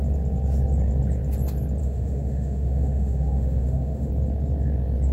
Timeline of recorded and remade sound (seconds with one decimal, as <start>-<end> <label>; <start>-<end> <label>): 0.0-1.8 recorded; 1.8-4.1 remade; 4.1-5.1 recorded